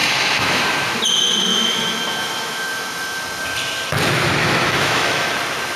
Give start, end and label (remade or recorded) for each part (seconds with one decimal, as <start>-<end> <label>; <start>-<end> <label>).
0.0-0.6 remade; 0.6-1.5 recorded; 1.5-3.2 remade; 3.2-4.4 recorded; 4.4-5.3 remade; 5.3-5.8 recorded